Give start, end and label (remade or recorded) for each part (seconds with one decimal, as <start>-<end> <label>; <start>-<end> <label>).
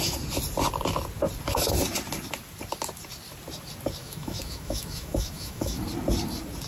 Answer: 0.0-4.0 recorded; 4.0-5.8 remade; 5.8-6.7 recorded